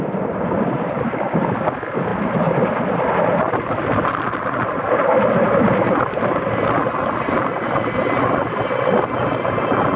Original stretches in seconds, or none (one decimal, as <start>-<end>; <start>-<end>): 0.0-10.0